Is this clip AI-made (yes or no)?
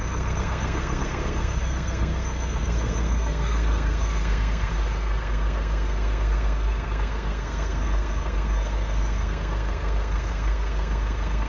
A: yes